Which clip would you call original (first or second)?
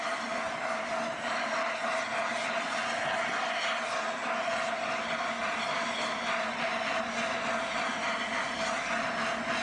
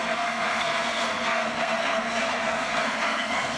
first